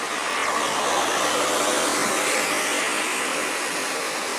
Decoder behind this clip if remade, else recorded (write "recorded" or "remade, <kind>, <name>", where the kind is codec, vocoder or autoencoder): recorded